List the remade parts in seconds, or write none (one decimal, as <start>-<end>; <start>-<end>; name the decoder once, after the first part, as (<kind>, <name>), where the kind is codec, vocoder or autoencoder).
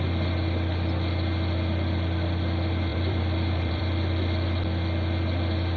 2.9-3.8 (vocoder, BigVGAN v2)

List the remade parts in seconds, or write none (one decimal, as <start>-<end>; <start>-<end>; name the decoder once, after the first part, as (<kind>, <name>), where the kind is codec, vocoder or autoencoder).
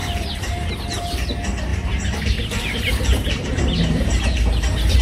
0.0-0.7 (vocoder, BigVGAN v2); 1.7-5.0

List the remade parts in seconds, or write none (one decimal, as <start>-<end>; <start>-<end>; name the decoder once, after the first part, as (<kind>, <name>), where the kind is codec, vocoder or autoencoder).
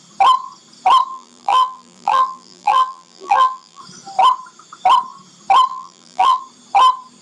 1.1-3.8 (vocoder, BigVGAN v2); 5.7-6.4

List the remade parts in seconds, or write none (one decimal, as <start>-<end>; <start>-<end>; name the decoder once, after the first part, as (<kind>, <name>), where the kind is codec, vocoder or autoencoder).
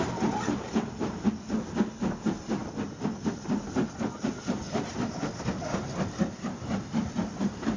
none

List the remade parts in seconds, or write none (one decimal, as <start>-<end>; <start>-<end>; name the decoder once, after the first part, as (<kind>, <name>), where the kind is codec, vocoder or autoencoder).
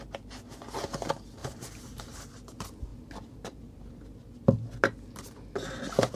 1.4-2.1 (vocoder, BigVGAN v2); 2.9-3.9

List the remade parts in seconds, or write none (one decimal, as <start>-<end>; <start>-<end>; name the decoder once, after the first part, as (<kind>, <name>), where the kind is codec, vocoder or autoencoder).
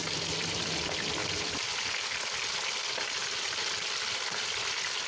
none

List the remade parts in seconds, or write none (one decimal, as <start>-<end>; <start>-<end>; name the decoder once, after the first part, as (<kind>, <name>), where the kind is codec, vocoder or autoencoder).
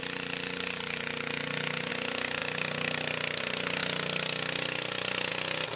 2.4-3.4 (vocoder, BigVGAN v2); 3.8-5.3